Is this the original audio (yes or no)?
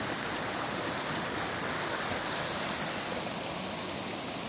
yes